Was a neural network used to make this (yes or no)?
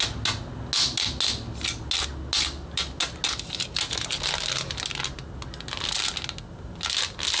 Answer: no